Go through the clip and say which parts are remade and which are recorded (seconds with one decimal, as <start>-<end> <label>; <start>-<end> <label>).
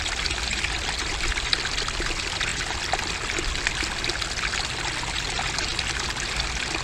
0.0-6.8 recorded